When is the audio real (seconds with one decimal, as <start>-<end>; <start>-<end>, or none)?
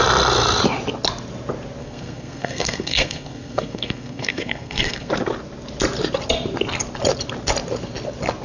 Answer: 0.0-1.8; 5.1-8.4